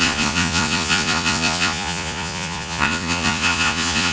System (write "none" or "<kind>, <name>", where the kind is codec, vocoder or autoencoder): vocoder, Vocos